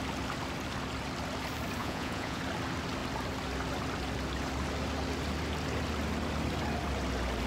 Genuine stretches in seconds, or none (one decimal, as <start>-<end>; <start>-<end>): 0.0-1.8; 2.4-7.5